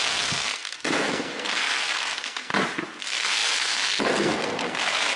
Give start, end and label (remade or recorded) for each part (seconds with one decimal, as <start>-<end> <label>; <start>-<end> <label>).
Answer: 0.0-2.5 remade; 2.5-3.0 recorded; 3.0-5.2 remade